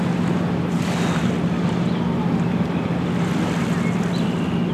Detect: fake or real real